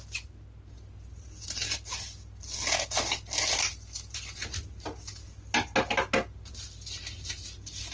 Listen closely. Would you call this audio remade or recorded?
recorded